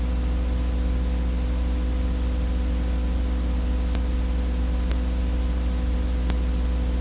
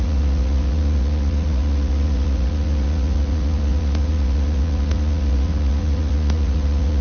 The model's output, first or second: second